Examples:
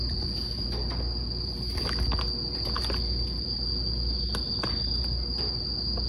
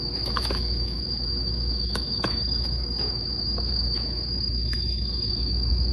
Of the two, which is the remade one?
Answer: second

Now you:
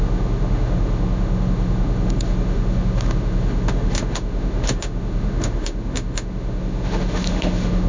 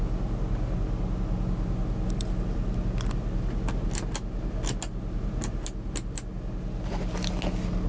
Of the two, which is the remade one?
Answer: first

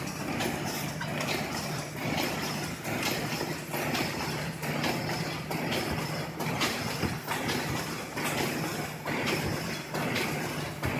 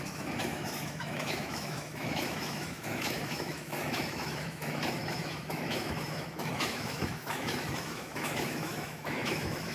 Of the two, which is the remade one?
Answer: second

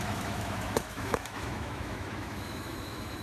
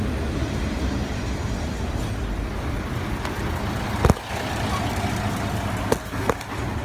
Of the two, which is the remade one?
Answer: first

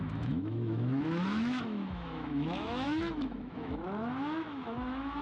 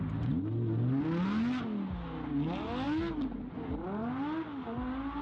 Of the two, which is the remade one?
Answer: first